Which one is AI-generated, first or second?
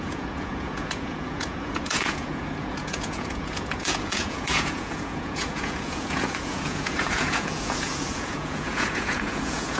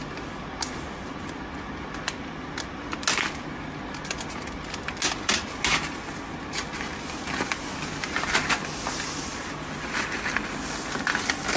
first